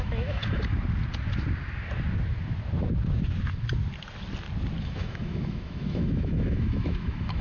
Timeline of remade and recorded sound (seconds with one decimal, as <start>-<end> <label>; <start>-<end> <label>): 0.0-0.4 remade; 0.4-4.8 recorded; 4.8-7.4 remade